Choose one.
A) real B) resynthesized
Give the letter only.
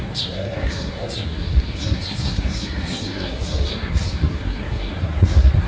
B